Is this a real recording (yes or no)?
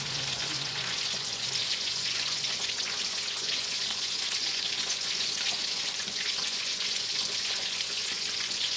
no